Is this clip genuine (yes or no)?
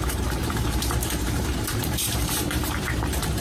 no